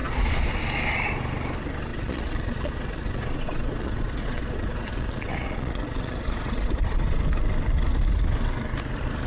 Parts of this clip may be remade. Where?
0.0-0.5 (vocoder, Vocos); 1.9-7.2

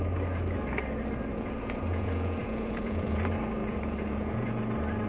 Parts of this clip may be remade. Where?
1.3-3.2 (vocoder, Vocos); 3.6-4.6

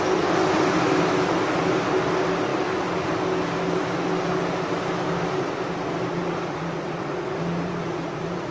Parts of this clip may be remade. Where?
6.1-8.5 (vocoder, Vocos)

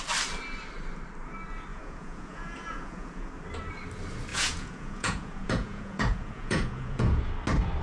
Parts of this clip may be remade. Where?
1.7-3.3 (vocoder, Vocos); 4.3-7.3